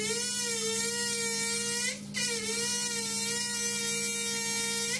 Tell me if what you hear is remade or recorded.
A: recorded